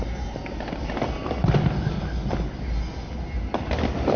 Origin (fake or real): real